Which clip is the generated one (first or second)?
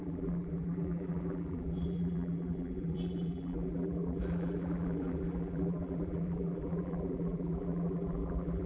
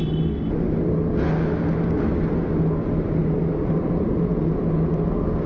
first